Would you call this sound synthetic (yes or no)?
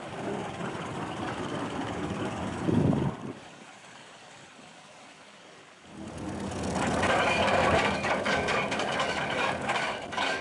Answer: yes